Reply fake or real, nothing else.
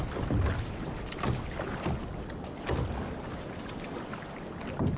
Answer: real